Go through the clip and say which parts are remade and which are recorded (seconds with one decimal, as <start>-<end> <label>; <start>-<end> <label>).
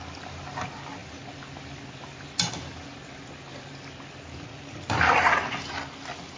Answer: 0.0-6.4 recorded